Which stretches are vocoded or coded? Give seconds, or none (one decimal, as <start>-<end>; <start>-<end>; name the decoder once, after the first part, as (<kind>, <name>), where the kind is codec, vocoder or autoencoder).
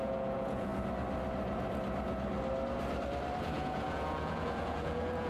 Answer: 0.0-0.7 (vocoder, Vocos); 3.4-5.3